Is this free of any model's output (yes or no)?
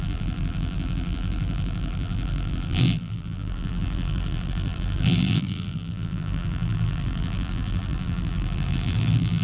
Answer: no